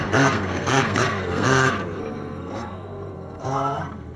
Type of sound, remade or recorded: remade